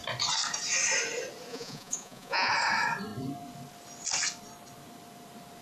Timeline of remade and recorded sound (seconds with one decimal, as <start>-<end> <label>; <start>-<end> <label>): 0.0-1.5 recorded; 1.5-2.5 remade; 2.5-5.6 recorded